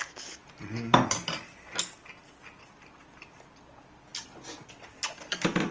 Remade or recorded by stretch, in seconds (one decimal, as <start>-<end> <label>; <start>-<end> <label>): 0.0-5.7 recorded